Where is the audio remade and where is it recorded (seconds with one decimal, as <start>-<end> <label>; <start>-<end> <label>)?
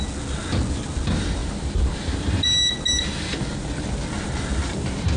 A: 0.0-1.4 recorded; 1.4-2.4 remade; 2.4-4.6 recorded; 4.6-5.2 remade